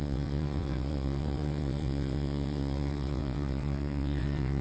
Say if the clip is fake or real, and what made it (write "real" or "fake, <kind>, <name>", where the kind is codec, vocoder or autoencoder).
fake, vocoder, WaveNeXt